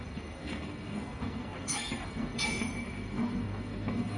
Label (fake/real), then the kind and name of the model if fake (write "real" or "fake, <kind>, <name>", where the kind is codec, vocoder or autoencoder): fake, codec, SNAC